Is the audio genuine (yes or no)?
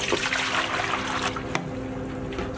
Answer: yes